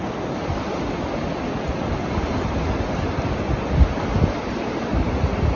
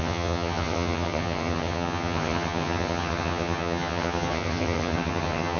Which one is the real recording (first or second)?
first